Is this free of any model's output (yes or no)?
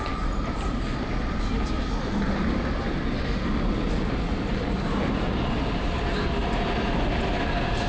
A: yes